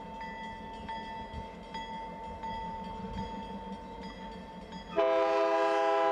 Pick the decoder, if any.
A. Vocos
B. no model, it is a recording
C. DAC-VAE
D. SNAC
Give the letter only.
B